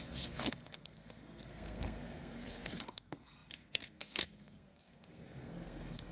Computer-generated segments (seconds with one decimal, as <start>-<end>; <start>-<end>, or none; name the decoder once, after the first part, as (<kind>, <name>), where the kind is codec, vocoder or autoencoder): 0.0-6.1 (codec, SNAC)